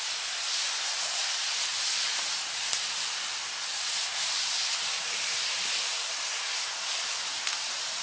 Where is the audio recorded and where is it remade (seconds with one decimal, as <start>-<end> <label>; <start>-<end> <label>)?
0.0-1.7 remade; 1.7-3.6 recorded; 3.6-8.0 remade